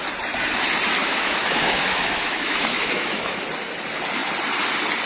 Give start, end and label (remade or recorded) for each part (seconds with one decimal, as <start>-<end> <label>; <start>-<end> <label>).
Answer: 0.0-1.0 recorded; 1.0-3.4 remade; 3.4-5.1 recorded